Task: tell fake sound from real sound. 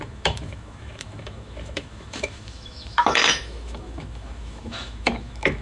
fake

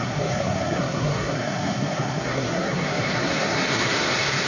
fake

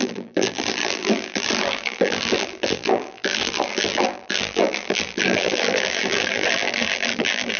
fake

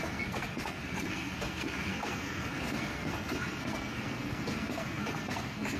fake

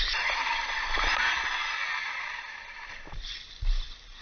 real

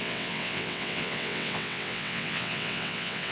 fake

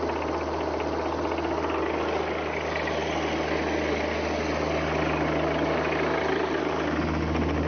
real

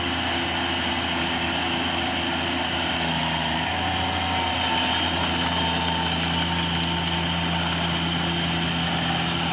real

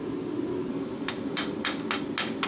real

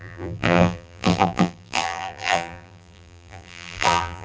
fake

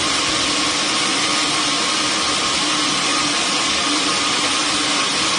real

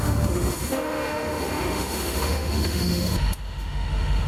fake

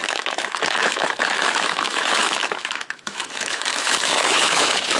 fake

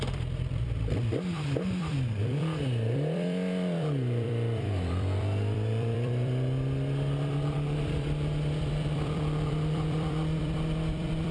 fake